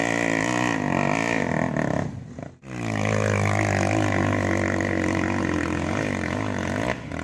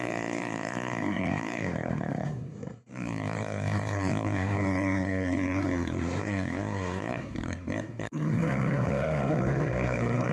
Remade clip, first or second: second